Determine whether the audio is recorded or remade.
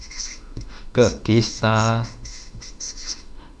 remade